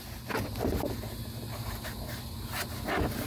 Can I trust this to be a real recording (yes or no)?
yes